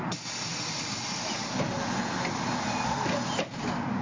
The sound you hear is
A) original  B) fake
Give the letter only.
A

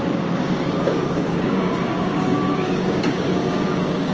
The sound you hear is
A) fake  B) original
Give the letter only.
A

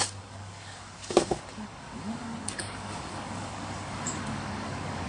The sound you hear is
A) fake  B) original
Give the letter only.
A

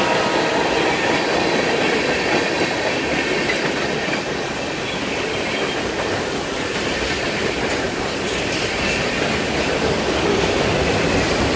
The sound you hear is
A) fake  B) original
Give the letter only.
B